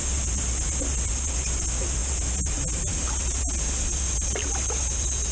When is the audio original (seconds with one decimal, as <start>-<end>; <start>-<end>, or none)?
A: 0.0-5.3